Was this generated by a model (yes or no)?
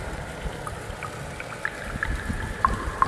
no